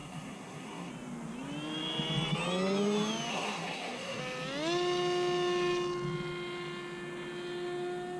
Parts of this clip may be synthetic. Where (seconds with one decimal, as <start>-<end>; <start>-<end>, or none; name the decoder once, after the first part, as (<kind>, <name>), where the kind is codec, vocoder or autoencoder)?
0.0-0.9 (codec, SNAC); 3.3-4.2